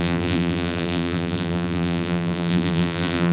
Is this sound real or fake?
fake